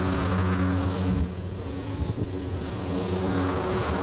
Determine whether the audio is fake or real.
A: real